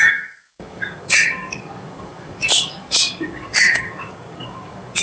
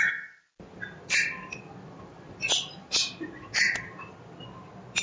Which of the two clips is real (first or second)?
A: second